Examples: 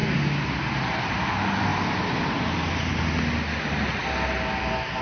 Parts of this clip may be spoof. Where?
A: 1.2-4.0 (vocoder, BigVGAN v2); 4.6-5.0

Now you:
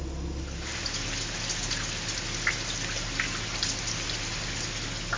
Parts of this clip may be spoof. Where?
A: none